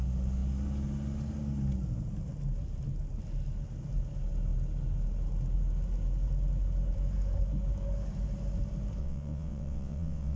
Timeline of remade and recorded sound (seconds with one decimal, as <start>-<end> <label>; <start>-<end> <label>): 0.0-9.0 recorded; 9.0-10.4 remade